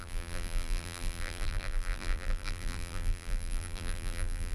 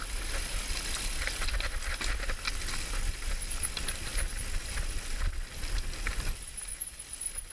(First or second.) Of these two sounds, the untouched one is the second